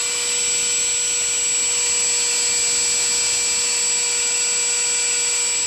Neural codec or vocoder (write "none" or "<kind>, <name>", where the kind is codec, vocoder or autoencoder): none